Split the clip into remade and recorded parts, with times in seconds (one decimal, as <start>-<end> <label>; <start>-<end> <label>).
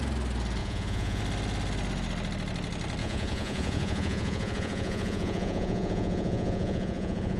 0.0-0.6 recorded; 0.6-1.2 remade; 1.2-3.0 recorded; 3.0-7.4 remade